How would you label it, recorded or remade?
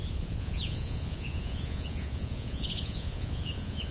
remade